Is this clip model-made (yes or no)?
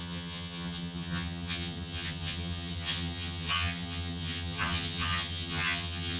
yes